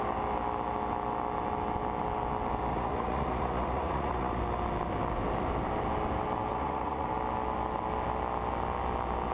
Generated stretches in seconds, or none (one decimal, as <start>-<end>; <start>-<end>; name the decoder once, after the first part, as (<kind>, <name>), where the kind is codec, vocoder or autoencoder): 2.7-4.4 (vocoder, Vocos); 6.5-7.1